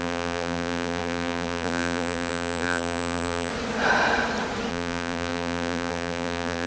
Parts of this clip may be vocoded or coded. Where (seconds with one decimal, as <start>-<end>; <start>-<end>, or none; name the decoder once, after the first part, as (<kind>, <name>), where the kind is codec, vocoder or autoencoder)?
0.0-3.5 (vocoder, BigVGAN v2); 4.7-6.7